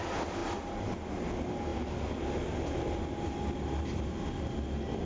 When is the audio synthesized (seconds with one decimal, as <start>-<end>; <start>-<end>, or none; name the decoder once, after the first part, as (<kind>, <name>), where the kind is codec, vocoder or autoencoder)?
none